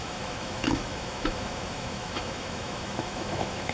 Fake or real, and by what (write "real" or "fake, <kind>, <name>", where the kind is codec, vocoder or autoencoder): fake, autoencoder, DAC-VAE